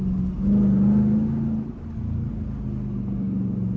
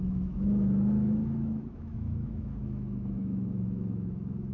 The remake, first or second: second